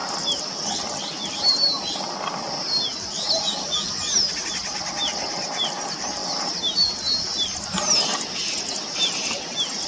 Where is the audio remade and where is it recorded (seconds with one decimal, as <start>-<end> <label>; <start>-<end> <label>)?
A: 0.0-9.9 recorded